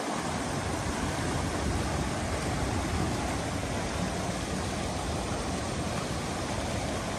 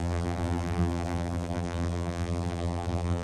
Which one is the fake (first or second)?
second